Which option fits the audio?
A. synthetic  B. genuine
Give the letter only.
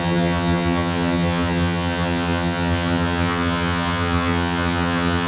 A